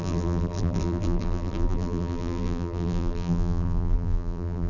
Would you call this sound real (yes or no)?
no